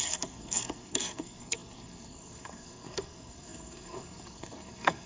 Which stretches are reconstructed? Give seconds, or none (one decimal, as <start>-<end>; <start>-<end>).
0.0-5.1